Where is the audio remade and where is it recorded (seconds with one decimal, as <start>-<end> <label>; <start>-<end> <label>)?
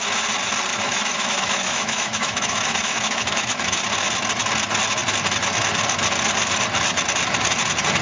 0.0-0.7 recorded; 0.7-3.8 remade; 3.8-8.0 recorded